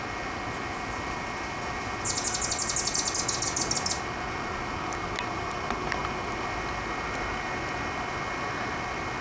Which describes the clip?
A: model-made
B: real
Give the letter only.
B